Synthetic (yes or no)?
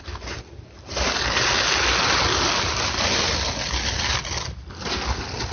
no